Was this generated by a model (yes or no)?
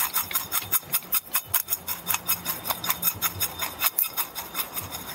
no